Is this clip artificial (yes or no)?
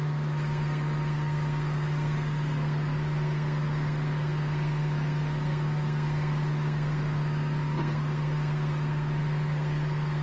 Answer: yes